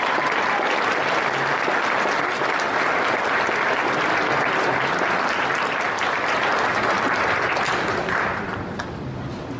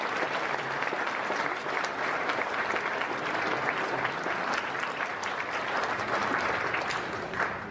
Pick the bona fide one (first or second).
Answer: first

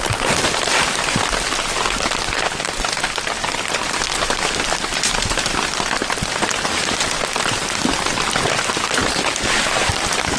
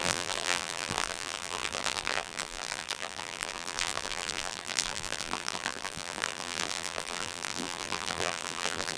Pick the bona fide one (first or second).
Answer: first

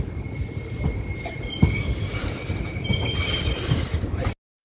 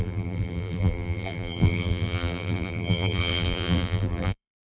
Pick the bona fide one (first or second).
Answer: first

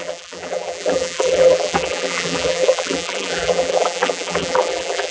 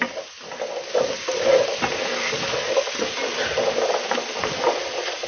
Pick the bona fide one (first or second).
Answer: second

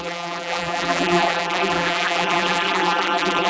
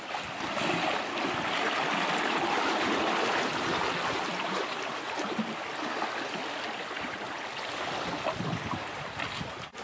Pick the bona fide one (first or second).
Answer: second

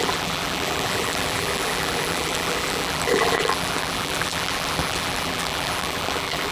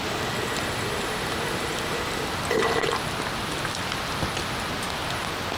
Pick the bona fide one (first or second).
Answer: second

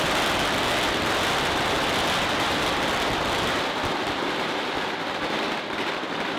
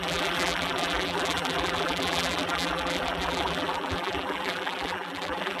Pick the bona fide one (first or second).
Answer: first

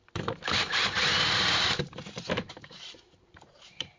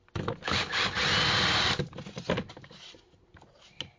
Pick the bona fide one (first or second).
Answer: second